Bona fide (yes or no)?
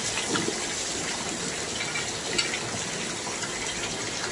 yes